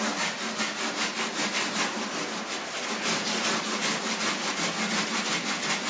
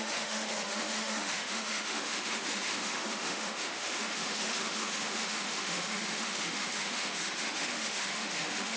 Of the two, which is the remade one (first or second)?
second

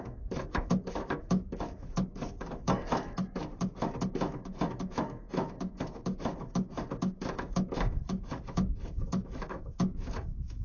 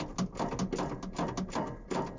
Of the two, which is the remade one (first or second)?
first